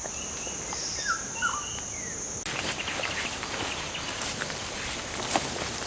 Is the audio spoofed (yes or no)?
no